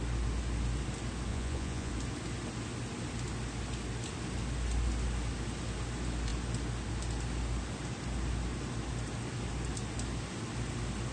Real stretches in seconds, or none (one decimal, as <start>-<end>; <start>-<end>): 0.0-1.3; 1.9-11.1